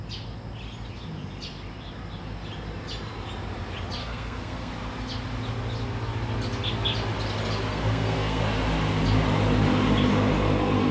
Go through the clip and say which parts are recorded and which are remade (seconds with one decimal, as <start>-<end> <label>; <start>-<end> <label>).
0.0-4.0 recorded; 4.0-4.7 remade; 4.7-7.7 recorded; 7.7-8.4 remade; 8.4-10.9 recorded